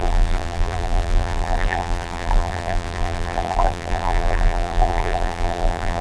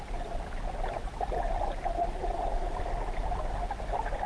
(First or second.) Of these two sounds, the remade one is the first